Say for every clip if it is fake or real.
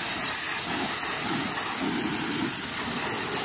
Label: real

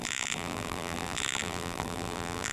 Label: fake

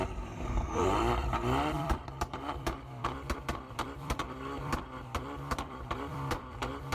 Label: fake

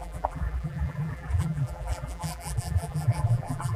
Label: fake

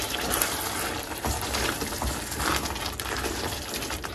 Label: fake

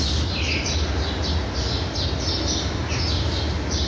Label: real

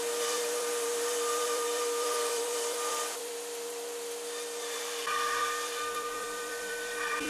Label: fake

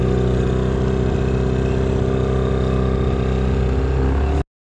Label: real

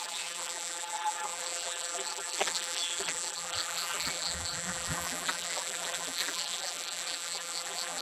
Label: fake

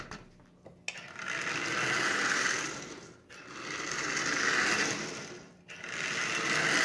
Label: real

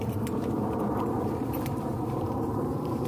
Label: fake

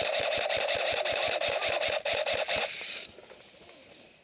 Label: fake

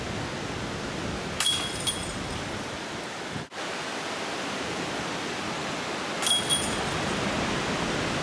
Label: real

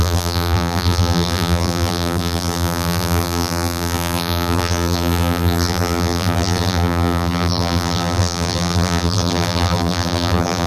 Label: fake